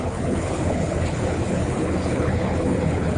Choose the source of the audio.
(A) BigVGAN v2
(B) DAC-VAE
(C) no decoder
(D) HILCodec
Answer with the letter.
D